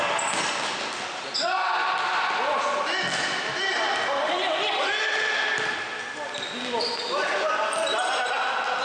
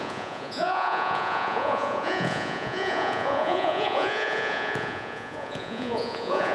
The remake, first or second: second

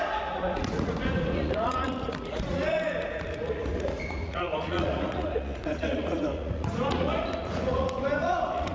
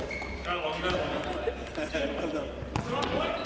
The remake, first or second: first